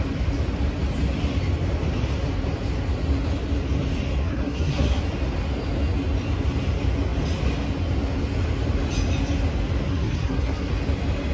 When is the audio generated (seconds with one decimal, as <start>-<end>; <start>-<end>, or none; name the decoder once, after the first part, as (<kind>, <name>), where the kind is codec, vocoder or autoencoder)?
4.2-5.0 (codec, SNAC); 9.9-10.7